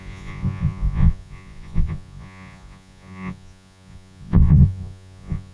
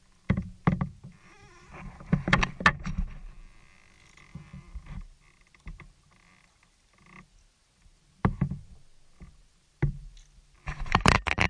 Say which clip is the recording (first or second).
second